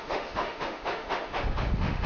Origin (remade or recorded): remade